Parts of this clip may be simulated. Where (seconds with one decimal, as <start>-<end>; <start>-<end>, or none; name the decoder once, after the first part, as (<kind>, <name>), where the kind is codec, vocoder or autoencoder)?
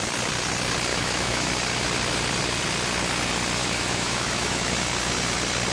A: 0.9-1.5 (autoencoder, DAC-VAE); 3.6-4.7